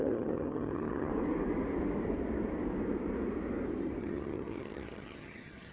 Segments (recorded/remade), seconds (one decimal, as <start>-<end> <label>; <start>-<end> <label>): 0.0-1.1 remade; 1.1-4.0 recorded; 4.0-5.7 remade